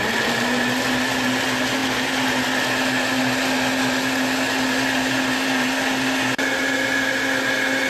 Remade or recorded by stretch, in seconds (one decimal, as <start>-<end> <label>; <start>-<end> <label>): 0.0-7.9 recorded